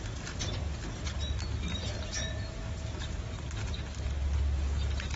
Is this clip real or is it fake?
real